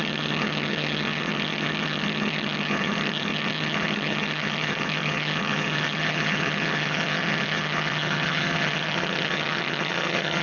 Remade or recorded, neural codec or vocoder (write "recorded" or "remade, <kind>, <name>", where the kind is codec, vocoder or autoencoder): remade, vocoder, HiFi-GAN